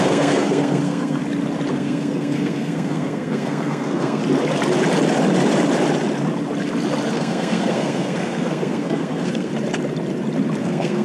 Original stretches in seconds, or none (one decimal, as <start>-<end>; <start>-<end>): 1.2-1.7; 4.2-7.1; 9.5-10.6